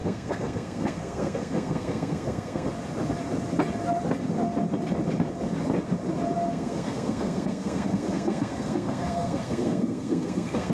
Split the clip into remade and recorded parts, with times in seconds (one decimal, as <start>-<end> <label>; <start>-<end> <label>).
0.0-2.7 remade; 2.7-6.5 recorded; 6.5-10.7 remade